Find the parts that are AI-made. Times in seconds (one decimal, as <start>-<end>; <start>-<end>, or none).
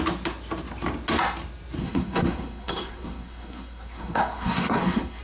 1.8-5.2